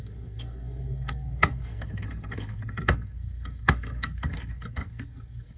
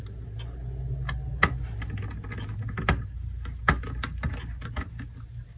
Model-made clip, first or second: first